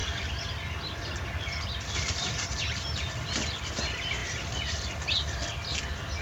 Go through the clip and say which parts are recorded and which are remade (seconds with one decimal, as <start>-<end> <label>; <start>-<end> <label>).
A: 0.0-4.2 recorded; 4.2-4.9 remade; 4.9-6.2 recorded